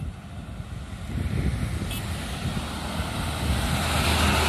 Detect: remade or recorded recorded